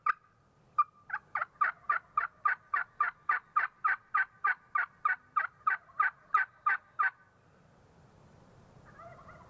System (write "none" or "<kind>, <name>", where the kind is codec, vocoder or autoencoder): vocoder, BigVGAN v2